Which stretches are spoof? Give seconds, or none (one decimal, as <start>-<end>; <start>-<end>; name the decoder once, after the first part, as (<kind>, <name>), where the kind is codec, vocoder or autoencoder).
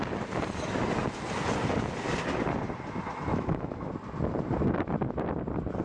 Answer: 3.3-3.9 (autoencoder, DAC-VAE)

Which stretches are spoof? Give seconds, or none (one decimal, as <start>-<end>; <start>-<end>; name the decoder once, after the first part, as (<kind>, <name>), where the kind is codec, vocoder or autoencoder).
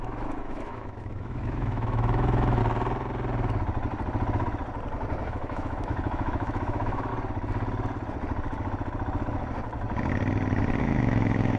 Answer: 0.0-2.6 (autoencoder, DAC-VAE); 5.3-7.1; 10.8-11.6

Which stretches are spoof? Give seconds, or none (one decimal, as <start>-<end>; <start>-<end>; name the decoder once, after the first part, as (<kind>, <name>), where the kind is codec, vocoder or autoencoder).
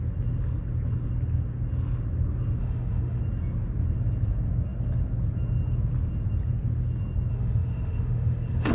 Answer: 2.6-3.2 (autoencoder, DAC-VAE); 7.3-8.7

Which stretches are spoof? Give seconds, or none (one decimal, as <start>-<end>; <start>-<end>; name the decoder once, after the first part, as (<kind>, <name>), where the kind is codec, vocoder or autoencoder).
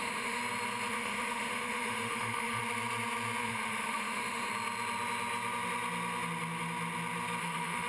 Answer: 0.0-0.4 (autoencoder, DAC-VAE); 0.9-2.6; 3.4-4.5; 7.4-7.9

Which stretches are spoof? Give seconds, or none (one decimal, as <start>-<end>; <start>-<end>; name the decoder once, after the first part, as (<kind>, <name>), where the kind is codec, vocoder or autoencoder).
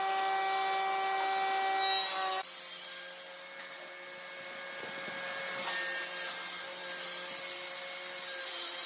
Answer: none